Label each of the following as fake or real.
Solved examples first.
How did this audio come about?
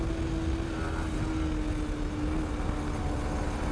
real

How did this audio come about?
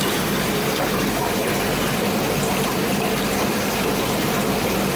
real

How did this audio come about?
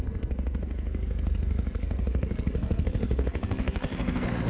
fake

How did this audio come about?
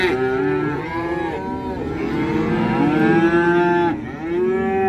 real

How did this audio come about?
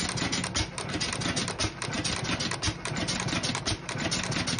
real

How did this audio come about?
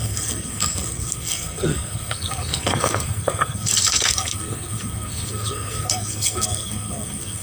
fake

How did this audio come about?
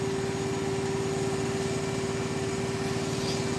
real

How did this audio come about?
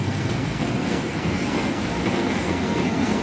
fake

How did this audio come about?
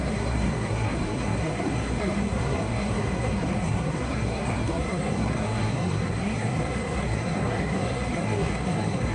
fake